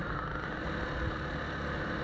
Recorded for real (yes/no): yes